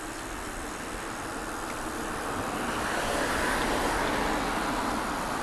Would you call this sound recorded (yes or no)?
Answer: yes